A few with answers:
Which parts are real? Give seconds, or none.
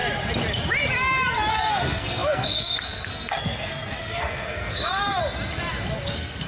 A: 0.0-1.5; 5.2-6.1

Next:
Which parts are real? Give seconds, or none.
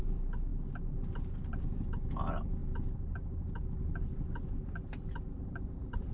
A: 0.5-1.5; 2.6-5.6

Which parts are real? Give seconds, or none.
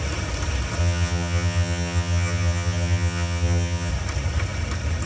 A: 0.0-0.8; 3.9-5.1